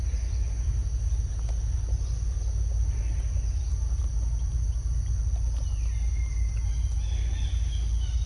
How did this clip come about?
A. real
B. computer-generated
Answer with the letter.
A